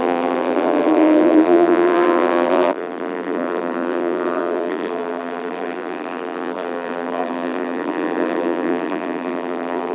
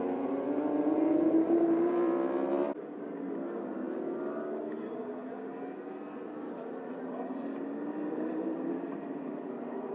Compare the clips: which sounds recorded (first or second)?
second